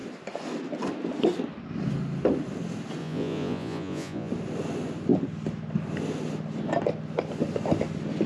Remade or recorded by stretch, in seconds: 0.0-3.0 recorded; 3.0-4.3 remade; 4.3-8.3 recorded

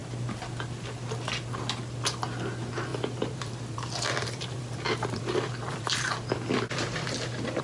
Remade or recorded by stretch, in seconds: 0.0-2.9 recorded; 2.9-7.6 remade

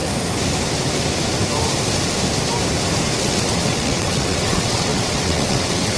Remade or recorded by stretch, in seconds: 0.0-3.2 recorded; 3.2-6.0 remade

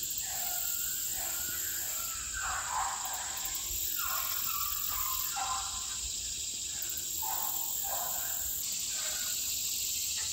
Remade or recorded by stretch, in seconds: 0.0-10.3 recorded

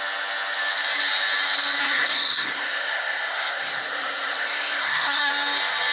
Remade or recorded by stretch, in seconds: 0.0-1.8 recorded; 1.8-5.3 remade; 5.3-5.9 recorded

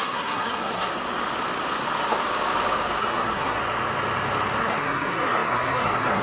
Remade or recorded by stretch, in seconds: 0.0-0.9 remade; 0.9-3.0 recorded; 3.0-3.6 remade; 3.6-4.6 recorded; 4.6-6.2 remade